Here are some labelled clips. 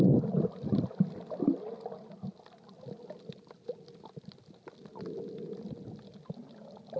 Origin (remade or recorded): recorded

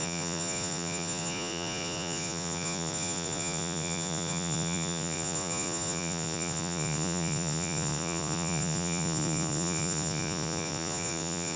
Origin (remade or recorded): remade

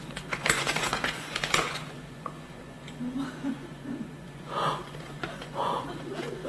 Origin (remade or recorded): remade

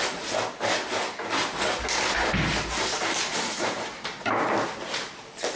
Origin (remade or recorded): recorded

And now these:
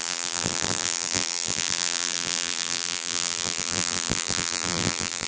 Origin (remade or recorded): remade